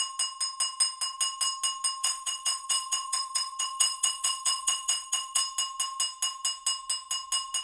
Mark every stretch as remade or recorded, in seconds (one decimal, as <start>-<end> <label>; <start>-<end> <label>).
0.0-2.0 recorded; 2.0-5.4 remade; 5.4-7.6 recorded